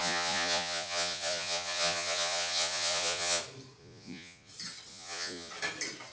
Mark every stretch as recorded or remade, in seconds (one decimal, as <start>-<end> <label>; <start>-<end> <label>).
0.0-3.4 remade; 3.4-3.8 recorded; 3.8-4.5 remade; 4.5-4.9 recorded; 4.9-5.5 remade; 5.5-6.1 recorded